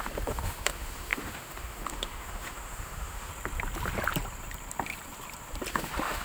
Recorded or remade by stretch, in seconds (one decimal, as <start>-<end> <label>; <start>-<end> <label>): 0.0-3.3 remade; 3.3-5.7 recorded; 5.7-6.2 remade